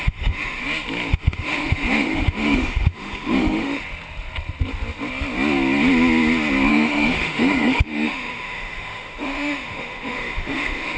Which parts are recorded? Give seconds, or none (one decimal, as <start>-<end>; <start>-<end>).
0.6-1.1; 3.8-6.7